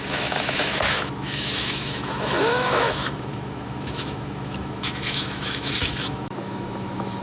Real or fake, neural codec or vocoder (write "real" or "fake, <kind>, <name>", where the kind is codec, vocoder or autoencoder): fake, autoencoder, DAC-VAE